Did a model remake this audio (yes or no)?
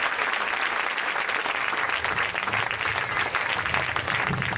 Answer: no